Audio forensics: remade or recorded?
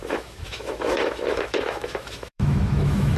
remade